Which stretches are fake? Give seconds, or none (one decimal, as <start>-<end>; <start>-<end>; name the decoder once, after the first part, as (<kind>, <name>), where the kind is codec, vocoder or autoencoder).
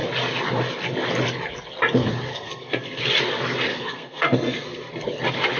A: 2.3-3.0 (codec, SNAC); 3.7-4.9